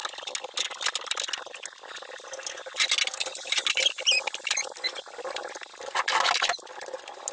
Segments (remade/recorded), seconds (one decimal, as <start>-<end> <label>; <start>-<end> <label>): 0.0-7.3 recorded

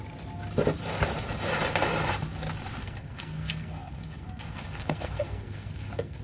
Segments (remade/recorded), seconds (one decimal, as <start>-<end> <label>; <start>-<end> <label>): 0.0-2.8 recorded; 2.8-6.2 remade

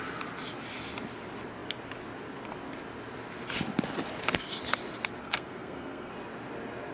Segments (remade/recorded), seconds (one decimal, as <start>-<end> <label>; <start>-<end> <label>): 0.0-5.2 recorded; 5.2-6.1 remade; 6.1-6.9 recorded

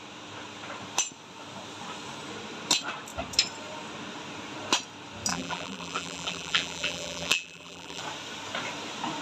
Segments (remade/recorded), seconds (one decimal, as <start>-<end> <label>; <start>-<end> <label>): 0.0-5.3 recorded; 5.3-8.0 remade; 8.0-9.2 recorded

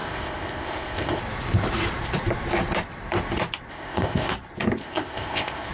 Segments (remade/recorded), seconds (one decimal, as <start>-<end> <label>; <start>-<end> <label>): 0.0-1.2 remade; 1.2-3.7 recorded; 3.7-4.3 remade; 4.3-4.8 recorded; 4.8-5.7 remade

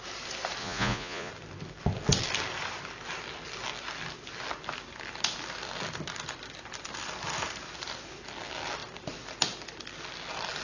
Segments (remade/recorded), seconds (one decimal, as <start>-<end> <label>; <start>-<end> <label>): 0.0-0.6 recorded; 0.6-1.3 remade; 1.3-10.6 recorded

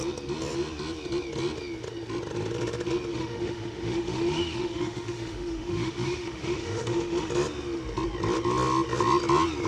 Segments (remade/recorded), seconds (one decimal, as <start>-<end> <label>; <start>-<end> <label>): 0.0-3.1 recorded; 3.1-7.3 remade; 7.3-9.7 recorded